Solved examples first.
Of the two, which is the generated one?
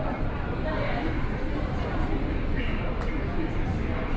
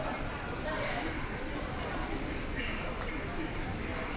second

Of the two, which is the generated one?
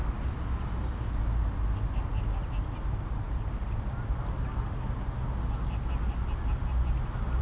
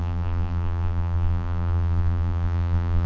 second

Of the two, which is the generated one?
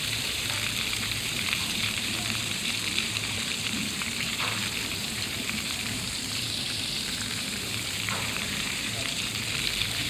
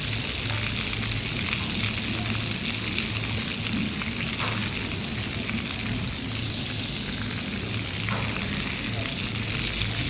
first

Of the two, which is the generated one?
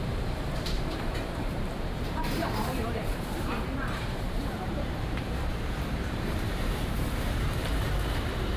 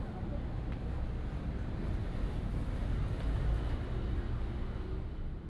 first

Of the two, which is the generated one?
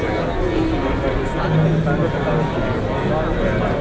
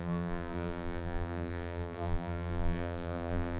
second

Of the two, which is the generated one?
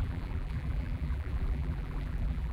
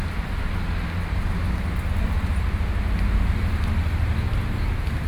first